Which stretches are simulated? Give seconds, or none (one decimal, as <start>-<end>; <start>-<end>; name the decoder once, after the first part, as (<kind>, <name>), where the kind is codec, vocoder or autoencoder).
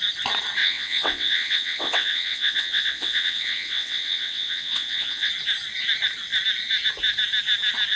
0.6-5.3 (vocoder, WaveNeXt)